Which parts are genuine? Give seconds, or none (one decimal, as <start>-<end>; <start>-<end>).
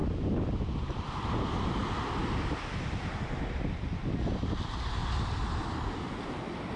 0.0-5.0